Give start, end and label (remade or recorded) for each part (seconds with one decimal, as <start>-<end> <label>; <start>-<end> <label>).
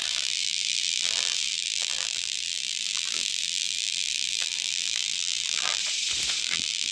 0.0-5.8 remade; 5.8-6.4 recorded; 6.4-6.9 remade